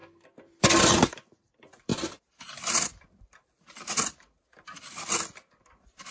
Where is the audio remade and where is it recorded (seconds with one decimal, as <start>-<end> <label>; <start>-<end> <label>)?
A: 0.0-6.1 recorded